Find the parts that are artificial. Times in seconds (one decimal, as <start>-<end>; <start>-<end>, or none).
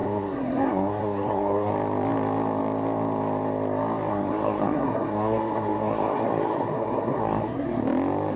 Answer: 0.0-1.7; 4.1-7.8